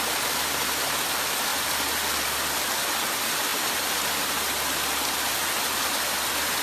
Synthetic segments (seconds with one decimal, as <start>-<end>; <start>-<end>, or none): none